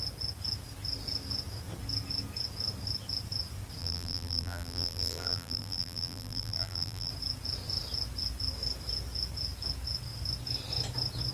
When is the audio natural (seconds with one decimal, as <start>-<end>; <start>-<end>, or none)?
0.0-3.8; 7.1-11.3